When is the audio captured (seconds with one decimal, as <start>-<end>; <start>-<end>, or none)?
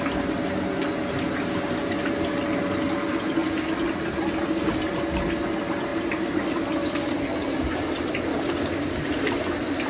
0.0-8.3; 9.0-9.9